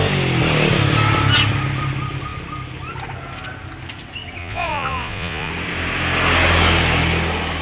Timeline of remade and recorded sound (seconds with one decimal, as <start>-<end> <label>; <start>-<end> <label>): 0.0-4.4 recorded; 4.4-5.5 remade; 5.5-7.6 recorded